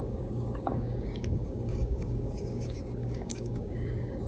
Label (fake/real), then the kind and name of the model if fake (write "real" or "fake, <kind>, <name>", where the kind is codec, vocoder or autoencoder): fake, codec, DAC